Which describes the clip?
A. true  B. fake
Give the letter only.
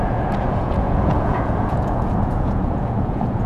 B